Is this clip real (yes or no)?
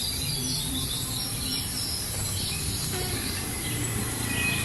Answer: yes